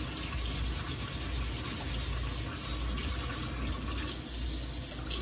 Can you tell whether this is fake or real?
real